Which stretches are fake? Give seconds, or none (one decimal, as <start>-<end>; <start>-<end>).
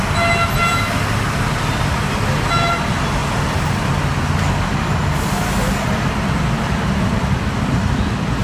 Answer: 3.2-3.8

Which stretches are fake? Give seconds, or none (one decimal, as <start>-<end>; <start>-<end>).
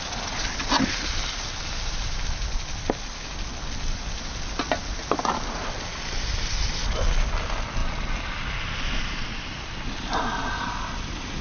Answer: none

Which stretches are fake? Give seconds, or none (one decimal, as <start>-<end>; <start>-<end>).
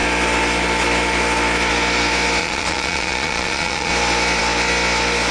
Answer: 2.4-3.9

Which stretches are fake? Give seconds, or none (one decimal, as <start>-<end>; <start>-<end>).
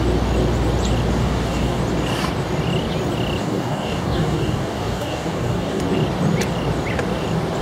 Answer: 1.2-1.8; 3.4-5.8